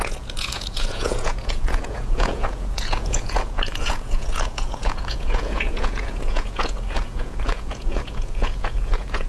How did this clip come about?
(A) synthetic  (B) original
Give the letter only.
A